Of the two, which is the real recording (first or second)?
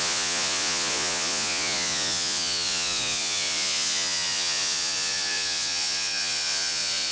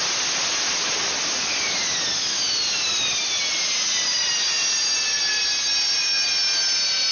second